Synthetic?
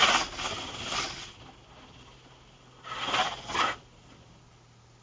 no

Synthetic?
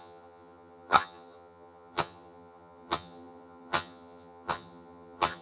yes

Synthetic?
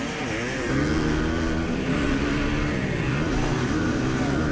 no